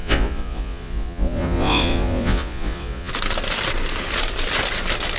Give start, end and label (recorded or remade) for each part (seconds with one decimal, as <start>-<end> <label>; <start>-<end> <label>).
0.0-3.1 remade; 3.1-5.2 recorded